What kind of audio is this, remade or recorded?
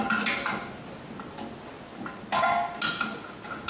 recorded